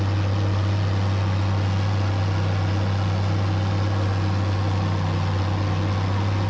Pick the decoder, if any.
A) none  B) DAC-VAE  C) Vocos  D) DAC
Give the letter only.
A